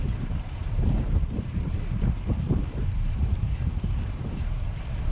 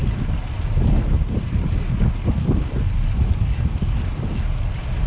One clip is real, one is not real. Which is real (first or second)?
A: second